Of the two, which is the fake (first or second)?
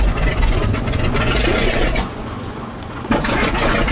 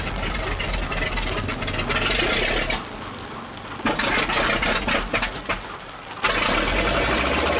first